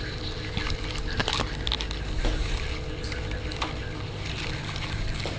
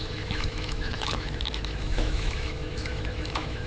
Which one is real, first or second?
first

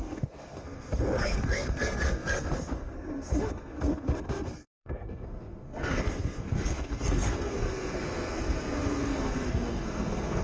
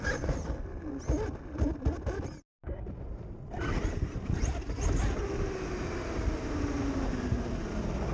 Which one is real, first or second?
second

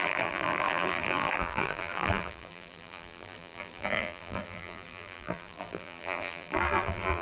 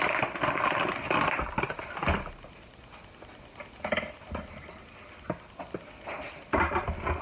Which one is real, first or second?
second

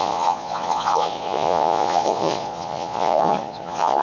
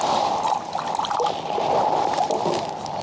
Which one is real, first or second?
second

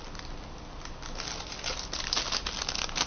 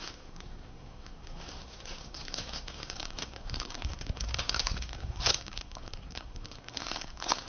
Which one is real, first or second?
first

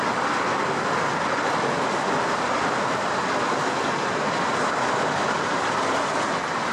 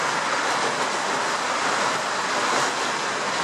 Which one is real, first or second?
second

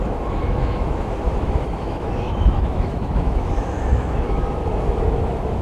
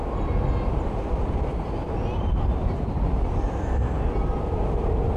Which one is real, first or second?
second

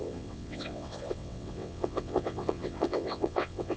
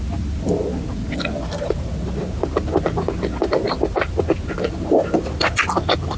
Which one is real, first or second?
second